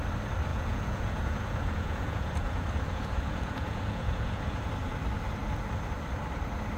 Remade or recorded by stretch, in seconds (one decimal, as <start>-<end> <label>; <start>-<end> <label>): 0.0-0.5 recorded; 0.5-4.6 remade; 4.6-6.8 recorded